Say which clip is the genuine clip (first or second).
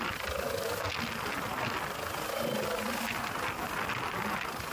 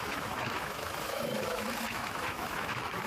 first